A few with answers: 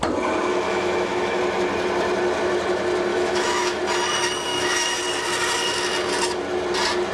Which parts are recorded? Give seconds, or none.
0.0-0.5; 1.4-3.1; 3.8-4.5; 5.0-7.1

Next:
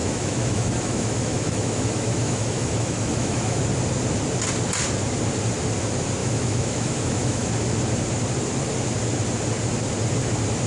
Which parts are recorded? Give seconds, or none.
3.6-6.2; 7.5-10.7

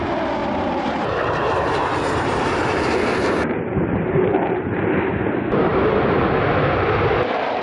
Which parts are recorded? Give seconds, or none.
0.0-0.4; 2.8-3.7; 4.7-7.6

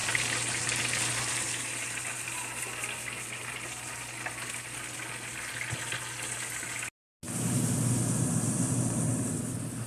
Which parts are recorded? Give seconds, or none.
0.0-9.9

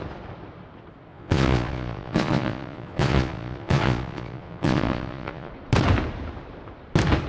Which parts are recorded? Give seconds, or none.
0.0-1.1; 5.5-7.3

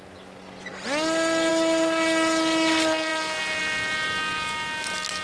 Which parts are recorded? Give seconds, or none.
0.0-5.2

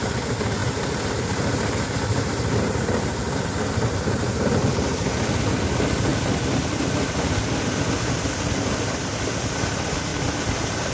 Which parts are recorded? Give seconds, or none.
0.0-0.6; 1.1-3.2; 5.4-6.1; 8.3-10.1

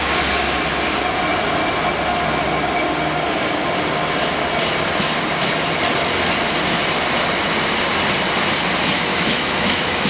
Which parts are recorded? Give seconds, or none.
0.0-9.1